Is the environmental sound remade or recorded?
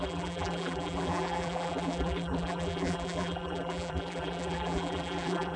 remade